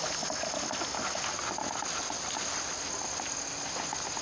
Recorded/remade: recorded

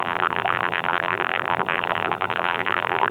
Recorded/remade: remade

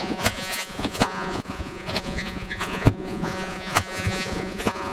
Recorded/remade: remade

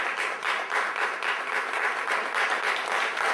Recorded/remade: recorded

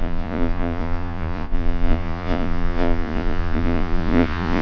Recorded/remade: remade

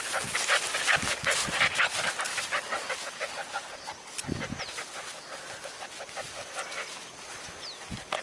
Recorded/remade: recorded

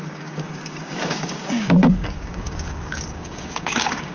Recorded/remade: remade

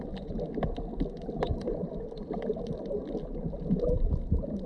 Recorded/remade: recorded